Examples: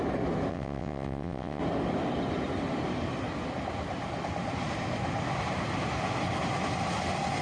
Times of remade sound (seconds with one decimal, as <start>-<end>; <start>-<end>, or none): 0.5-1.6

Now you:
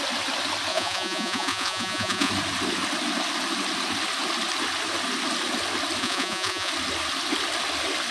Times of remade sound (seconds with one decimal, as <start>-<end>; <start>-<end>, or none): 0.7-2.3; 6.0-6.7

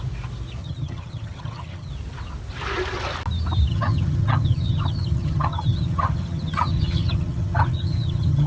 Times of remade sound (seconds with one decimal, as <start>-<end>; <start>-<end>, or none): 0.6-1.9; 3.7-8.5